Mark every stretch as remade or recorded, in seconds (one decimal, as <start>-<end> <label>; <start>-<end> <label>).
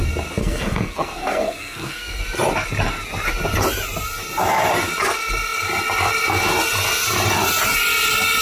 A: 0.0-0.4 recorded; 0.4-2.2 remade; 2.2-8.4 recorded